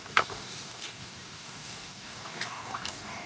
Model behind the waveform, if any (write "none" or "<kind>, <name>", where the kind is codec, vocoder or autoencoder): codec, DAC